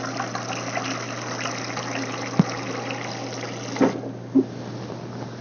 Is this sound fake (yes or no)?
no